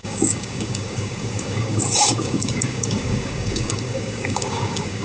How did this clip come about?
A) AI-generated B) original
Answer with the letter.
A